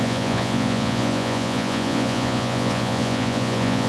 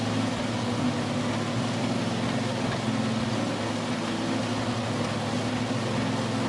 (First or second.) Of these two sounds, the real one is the second